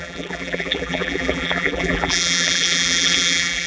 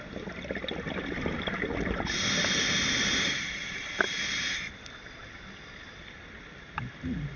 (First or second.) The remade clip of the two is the first